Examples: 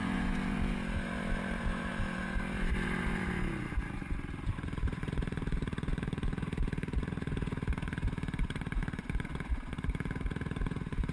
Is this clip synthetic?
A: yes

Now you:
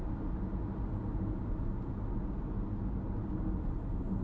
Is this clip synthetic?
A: no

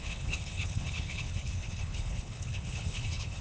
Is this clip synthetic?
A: yes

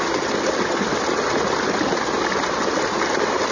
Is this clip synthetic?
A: no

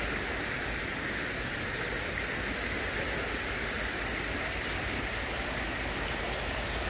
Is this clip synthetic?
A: no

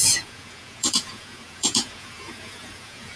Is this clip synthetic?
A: yes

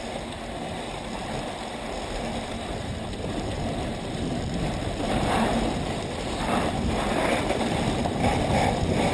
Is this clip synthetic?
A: yes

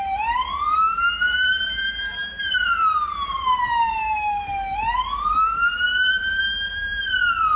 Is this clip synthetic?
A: yes